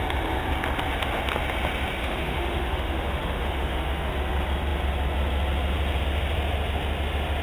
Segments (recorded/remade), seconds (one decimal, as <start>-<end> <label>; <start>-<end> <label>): 0.0-2.0 recorded; 2.0-4.1 remade; 4.1-7.4 recorded